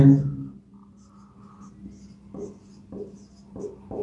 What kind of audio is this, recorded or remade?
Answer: recorded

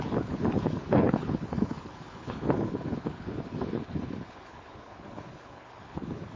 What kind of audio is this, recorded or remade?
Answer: remade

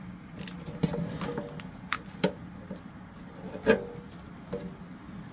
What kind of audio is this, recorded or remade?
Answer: recorded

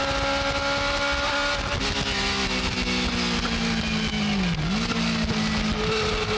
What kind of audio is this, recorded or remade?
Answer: recorded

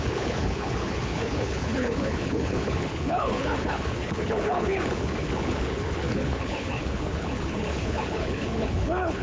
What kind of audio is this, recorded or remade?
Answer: remade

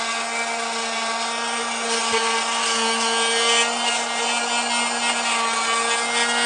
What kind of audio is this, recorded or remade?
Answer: recorded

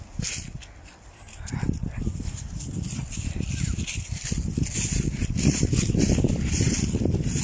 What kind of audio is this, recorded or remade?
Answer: recorded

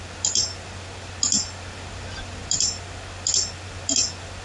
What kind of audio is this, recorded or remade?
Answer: recorded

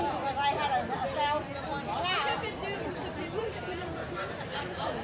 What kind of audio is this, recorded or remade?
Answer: recorded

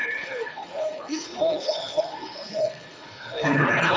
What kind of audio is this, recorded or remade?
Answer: remade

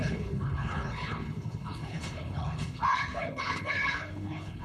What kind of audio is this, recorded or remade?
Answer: remade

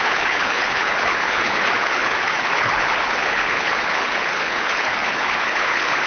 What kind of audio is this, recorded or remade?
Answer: remade